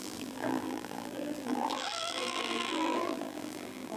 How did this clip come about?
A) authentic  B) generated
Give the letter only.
B